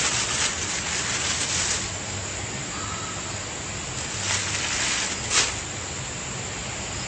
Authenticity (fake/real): real